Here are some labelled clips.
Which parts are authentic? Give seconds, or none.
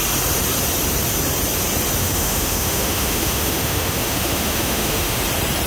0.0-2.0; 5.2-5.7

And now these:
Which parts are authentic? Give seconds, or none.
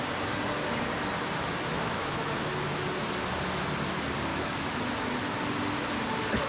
0.0-1.7; 2.2-4.3; 4.8-6.5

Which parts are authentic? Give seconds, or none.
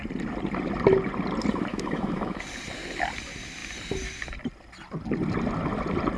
0.0-1.7; 2.4-6.2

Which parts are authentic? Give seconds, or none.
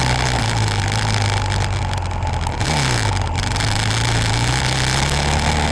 0.0-5.7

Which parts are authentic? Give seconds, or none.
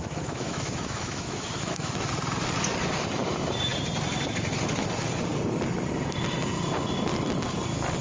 2.1-8.0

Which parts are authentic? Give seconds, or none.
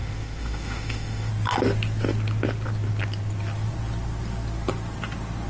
1.3-5.5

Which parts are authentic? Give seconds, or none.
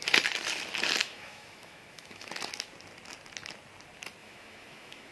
0.0-1.0; 2.3-4.2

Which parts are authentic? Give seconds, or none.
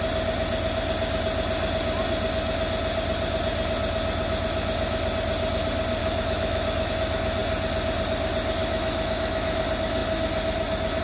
0.0-6.0; 6.9-8.6; 9.6-11.0